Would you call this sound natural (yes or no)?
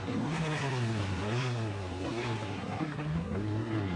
no